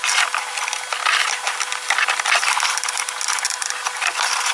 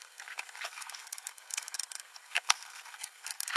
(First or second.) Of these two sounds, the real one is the first